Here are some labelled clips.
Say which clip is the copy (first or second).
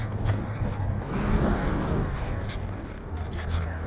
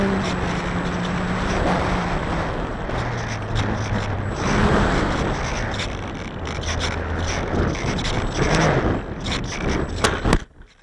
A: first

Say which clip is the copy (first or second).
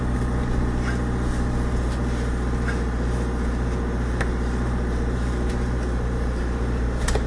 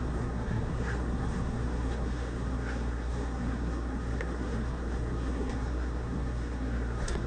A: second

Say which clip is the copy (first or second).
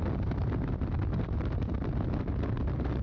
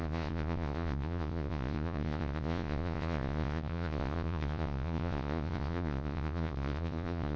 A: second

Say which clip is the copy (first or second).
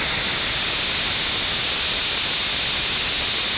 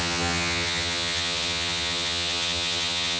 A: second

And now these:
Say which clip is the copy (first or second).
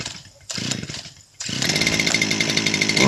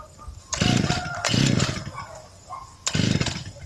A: first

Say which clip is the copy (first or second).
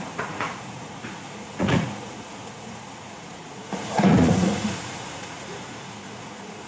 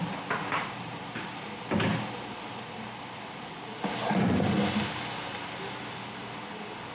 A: first